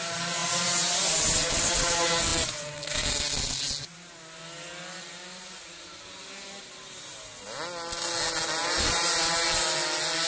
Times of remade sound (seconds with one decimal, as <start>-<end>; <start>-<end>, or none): none